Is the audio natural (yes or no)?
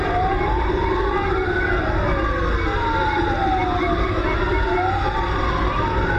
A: yes